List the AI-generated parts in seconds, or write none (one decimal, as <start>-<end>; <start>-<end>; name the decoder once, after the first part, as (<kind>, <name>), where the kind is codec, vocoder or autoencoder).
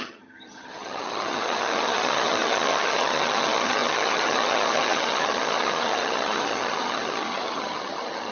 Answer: 0.0-8.3 (vocoder, HiFi-GAN)